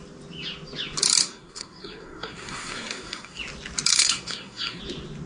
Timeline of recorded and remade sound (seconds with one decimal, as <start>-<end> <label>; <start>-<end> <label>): 0.0-1.2 recorded; 1.2-3.4 remade; 3.4-3.9 recorded; 3.9-4.8 remade; 4.8-5.3 recorded